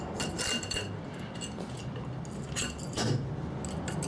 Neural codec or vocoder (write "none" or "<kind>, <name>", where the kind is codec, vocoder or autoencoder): none